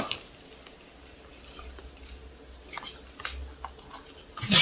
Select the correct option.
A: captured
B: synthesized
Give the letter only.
A